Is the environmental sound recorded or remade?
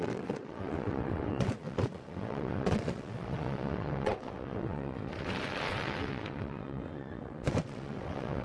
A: remade